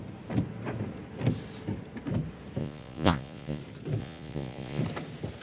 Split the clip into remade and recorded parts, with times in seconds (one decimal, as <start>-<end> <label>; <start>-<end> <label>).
0.0-2.6 recorded; 2.6-3.6 remade; 3.6-4.0 recorded; 4.0-4.8 remade; 4.8-5.4 recorded